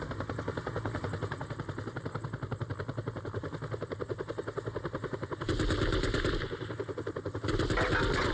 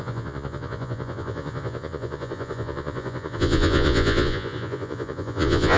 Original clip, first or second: first